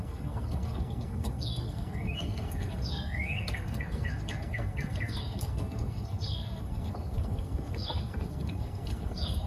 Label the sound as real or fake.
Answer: fake